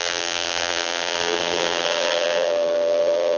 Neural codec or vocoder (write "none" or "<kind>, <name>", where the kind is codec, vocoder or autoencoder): vocoder, BigVGAN v2